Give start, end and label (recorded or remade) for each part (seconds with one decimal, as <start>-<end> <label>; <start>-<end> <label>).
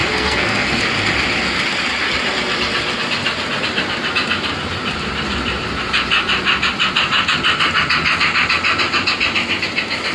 0.0-0.8 remade; 0.8-10.1 recorded